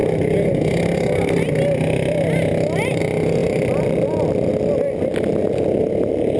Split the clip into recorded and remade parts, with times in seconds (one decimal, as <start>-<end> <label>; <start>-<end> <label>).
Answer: 0.0-6.4 recorded